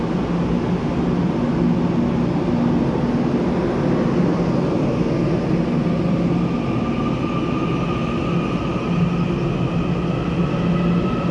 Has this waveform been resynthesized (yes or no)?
no